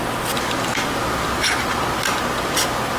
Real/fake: real